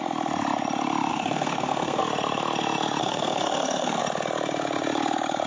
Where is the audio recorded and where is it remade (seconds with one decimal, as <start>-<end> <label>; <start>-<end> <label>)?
0.0-1.1 recorded; 1.1-2.0 remade; 2.0-3.0 recorded; 3.0-4.0 remade; 4.0-5.5 recorded